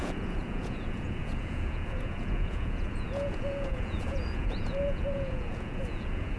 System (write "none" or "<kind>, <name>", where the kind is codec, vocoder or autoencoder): vocoder, Vocos